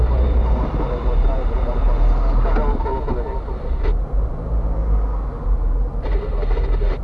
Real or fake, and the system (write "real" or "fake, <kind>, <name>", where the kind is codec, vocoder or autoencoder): real